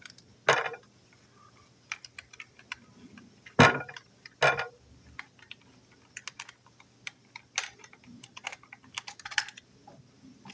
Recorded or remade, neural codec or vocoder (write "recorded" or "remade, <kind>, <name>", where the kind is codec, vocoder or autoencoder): recorded